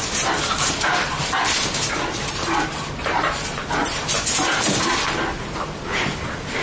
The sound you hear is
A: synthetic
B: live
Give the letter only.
A